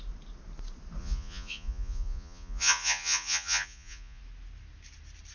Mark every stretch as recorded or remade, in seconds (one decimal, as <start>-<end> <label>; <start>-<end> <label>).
0.0-1.0 recorded; 1.0-4.2 remade; 4.2-5.3 recorded